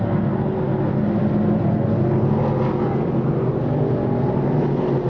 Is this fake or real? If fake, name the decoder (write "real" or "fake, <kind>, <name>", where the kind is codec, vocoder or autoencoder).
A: real